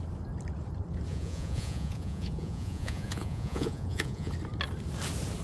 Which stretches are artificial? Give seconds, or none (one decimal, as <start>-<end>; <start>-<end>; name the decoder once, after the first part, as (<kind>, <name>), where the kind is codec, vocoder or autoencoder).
1.1-4.3 (vocoder, Vocos)